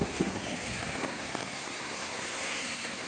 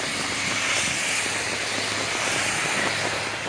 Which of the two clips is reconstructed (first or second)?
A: first